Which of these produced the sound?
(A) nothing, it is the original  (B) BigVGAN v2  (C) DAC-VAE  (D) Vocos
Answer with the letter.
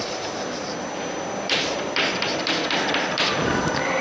B